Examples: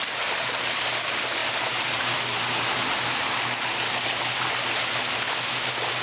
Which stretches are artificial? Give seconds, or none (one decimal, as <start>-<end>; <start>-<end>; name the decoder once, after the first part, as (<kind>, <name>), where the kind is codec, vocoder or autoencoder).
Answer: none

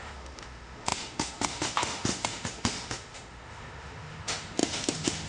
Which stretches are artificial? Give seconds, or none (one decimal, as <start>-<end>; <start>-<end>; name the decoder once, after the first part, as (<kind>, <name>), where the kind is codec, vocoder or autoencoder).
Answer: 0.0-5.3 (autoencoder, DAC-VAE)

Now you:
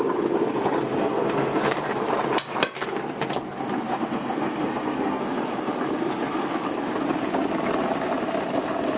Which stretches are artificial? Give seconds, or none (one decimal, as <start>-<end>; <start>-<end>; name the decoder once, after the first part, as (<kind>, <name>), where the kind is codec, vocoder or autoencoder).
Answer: 1.0-1.6 (codec, SNAC); 3.9-5.2

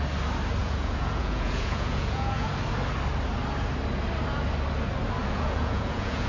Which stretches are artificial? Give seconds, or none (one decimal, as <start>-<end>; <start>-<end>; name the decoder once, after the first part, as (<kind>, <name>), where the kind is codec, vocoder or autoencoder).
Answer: 0.6-2.5 (vocoder, Vocos); 5.2-6.3

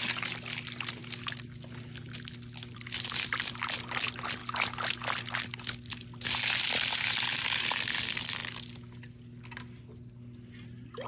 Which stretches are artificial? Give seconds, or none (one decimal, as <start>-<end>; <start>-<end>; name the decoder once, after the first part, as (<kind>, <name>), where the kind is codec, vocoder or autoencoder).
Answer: none

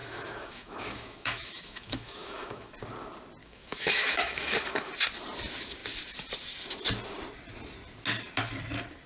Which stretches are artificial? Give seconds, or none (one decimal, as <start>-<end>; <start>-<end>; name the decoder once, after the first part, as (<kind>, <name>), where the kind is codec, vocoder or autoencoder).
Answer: 0.0-2.7 (autoencoder, DAC-VAE); 3.4-4.9